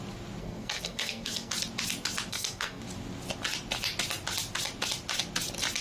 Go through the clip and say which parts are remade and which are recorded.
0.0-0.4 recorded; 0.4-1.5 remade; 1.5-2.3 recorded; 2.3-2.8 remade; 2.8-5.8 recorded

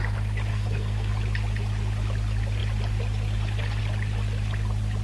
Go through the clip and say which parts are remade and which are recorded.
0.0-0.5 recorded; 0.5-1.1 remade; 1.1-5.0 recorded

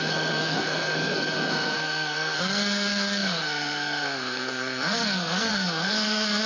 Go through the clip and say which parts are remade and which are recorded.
0.0-6.5 remade

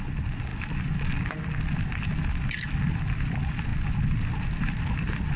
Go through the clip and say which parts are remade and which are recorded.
0.0-5.4 recorded

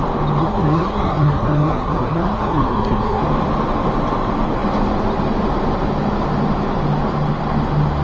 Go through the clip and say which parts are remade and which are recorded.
0.0-0.4 recorded; 0.4-3.2 remade; 3.2-8.0 recorded

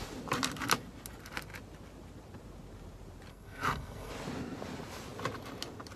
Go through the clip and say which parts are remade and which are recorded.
0.0-3.3 recorded; 3.3-4.1 remade; 4.1-6.0 recorded

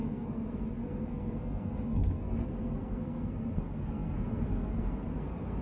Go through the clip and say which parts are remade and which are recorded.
0.0-5.6 remade